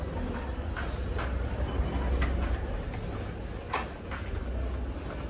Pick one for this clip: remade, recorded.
recorded